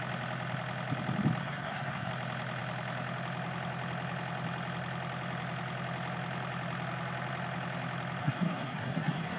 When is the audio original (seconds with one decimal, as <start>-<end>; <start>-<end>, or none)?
0.0-1.4; 2.1-8.2